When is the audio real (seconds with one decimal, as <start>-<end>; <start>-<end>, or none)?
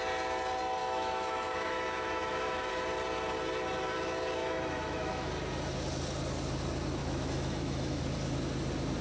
0.0-0.8; 2.7-4.4; 5.3-7.0; 8.0-9.0